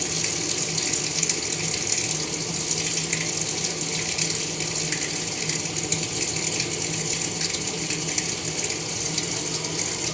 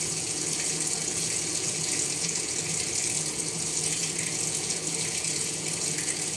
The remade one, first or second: second